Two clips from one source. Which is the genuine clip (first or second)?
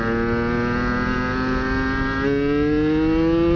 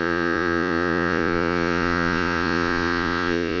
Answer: first